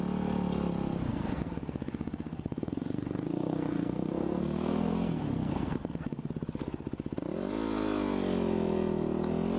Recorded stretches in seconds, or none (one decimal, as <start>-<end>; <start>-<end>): 0.0-1.1; 6.3-9.6